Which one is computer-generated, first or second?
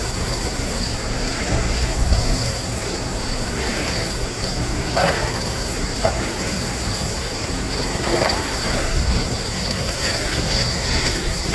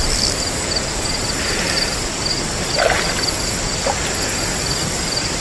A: first